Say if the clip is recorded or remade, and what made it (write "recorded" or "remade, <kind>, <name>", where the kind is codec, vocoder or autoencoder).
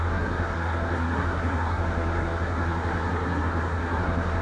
remade, codec, SNAC